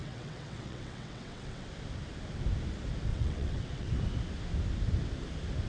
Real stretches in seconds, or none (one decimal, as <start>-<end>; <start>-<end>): 1.7-3.1; 3.9-5.7